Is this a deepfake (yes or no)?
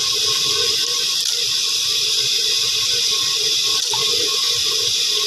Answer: no